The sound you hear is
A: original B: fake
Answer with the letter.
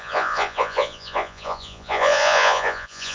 B